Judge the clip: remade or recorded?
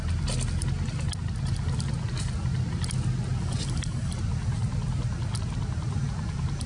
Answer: recorded